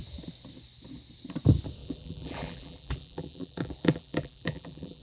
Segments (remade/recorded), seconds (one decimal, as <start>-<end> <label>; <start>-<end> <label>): 0.0-1.8 recorded; 1.8-5.0 remade